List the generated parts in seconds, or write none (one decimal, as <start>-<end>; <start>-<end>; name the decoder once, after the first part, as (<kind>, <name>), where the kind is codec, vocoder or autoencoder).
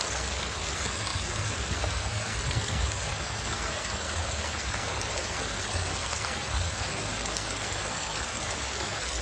0.0-9.2 (codec, SNAC)